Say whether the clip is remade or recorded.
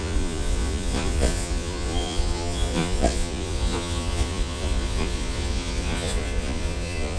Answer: remade